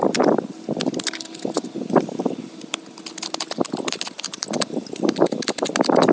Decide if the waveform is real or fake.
real